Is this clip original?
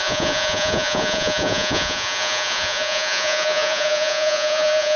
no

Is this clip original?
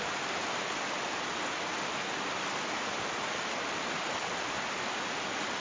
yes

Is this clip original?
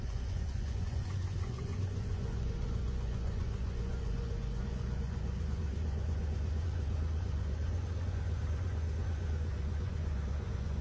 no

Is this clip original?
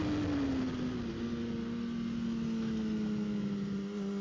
yes